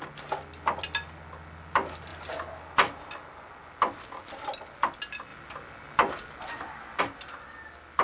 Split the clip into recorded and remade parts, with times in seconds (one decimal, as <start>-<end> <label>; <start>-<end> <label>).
0.0-8.0 recorded

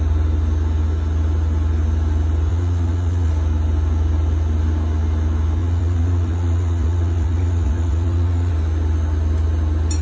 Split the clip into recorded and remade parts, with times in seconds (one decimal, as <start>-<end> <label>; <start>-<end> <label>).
0.0-2.5 recorded; 2.5-3.3 remade; 3.3-5.6 recorded; 5.6-8.5 remade; 8.5-10.0 recorded